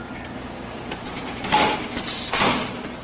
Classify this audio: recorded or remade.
recorded